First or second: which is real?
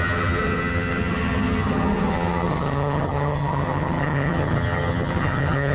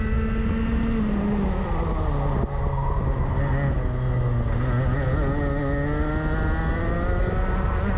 second